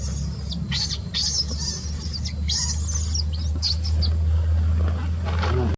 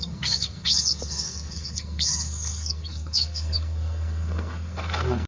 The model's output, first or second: second